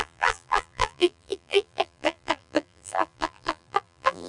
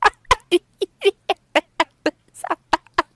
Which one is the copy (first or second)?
first